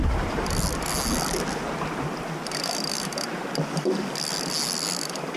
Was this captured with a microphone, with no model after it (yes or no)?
yes